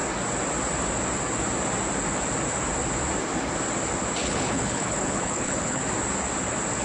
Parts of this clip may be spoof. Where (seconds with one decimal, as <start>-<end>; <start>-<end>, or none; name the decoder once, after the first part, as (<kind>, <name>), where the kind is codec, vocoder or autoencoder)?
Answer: 4.2-5.8 (codec, HILCodec)

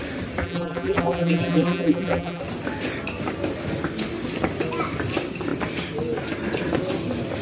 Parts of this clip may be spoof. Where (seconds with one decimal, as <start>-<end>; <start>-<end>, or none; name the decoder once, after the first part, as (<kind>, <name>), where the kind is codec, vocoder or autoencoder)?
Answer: 0.4-2.4 (vocoder, BigVGAN v2)

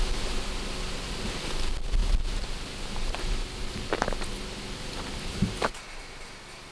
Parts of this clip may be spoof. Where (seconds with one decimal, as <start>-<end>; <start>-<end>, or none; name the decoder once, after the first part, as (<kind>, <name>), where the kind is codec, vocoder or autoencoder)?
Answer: none

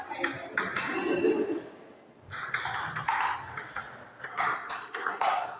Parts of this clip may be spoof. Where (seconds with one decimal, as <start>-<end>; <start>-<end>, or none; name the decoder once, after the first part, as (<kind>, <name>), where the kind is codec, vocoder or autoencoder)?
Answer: 4.3-5.6 (codec, SNAC)

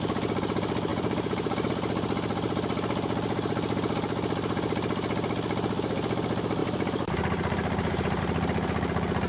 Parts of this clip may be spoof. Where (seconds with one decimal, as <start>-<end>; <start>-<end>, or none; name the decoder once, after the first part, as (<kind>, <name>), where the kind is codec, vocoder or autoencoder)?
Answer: 0.9-1.7 (vocoder, BigVGAN v2); 6.6-8.2

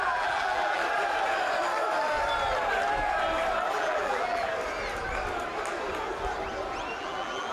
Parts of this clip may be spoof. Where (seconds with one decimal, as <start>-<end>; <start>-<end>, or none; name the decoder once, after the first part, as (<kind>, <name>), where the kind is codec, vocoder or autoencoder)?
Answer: 0.0-0.8 (vocoder, BigVGAN v2); 3.7-4.5; 7.0-7.5

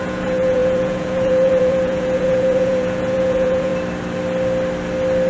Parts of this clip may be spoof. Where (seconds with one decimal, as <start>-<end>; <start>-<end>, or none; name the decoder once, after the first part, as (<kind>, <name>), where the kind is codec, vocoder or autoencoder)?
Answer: 0.0-3.7 (vocoder, Vocos)

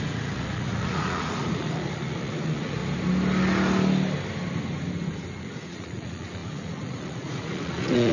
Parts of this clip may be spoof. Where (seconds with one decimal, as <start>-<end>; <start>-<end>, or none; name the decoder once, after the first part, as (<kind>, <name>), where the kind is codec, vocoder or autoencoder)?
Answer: 0.0-2.8 (vocoder, Vocos); 5.4-8.1